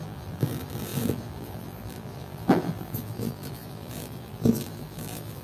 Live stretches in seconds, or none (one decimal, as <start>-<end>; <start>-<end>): none